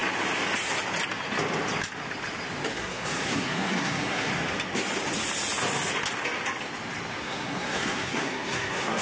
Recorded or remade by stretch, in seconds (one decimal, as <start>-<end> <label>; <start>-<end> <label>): 0.0-2.7 recorded; 2.7-4.3 remade; 4.3-7.2 recorded; 7.2-9.0 remade